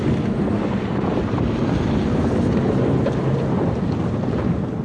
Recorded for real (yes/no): yes